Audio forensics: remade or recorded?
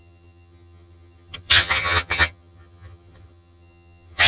remade